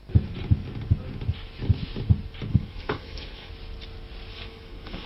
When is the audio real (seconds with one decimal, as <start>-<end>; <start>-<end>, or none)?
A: 0.0-2.5; 3.5-4.3